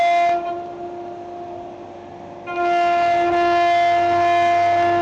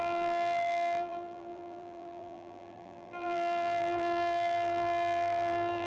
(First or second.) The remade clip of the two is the second